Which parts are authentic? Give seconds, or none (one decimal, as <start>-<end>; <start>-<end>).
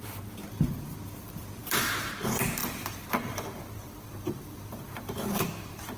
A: 0.0-1.6; 2.1-2.6